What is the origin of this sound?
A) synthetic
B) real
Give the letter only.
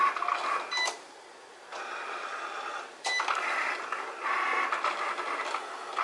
B